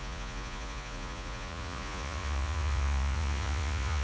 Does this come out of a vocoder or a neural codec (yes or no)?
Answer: yes